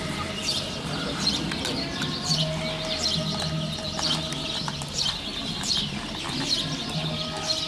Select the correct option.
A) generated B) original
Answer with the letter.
B